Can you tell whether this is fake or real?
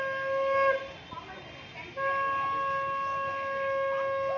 real